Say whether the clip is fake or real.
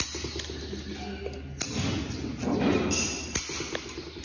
real